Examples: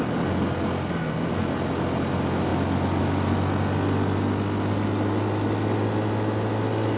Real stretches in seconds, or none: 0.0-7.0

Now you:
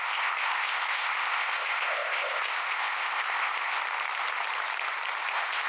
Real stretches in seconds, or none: 3.8-5.2

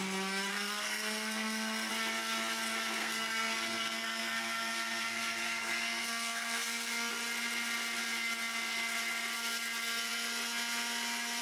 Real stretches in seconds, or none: 0.0-0.5; 1.9-3.0; 7.1-11.4